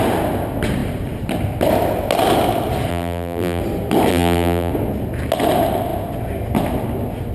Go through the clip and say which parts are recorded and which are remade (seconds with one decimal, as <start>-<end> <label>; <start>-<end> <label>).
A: 0.0-2.9 recorded; 2.9-3.6 remade; 3.6-4.1 recorded; 4.1-4.7 remade; 4.7-7.3 recorded